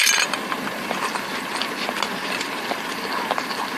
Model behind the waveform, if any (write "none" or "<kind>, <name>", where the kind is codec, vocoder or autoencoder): none